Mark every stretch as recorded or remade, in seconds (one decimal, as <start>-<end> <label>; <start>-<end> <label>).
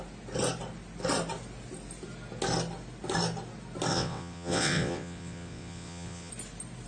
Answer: 0.0-3.9 recorded; 3.9-6.3 remade; 6.3-6.9 recorded